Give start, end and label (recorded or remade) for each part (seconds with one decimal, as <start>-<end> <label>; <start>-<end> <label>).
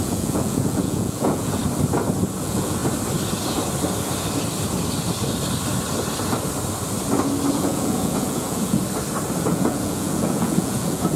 0.0-1.6 remade; 1.6-2.4 recorded; 2.4-2.8 remade; 2.8-7.5 recorded; 7.5-8.8 remade; 8.8-9.5 recorded; 9.5-11.2 remade